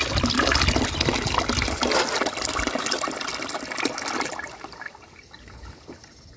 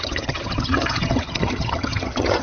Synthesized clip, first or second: second